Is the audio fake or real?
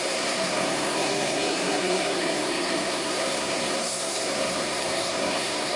fake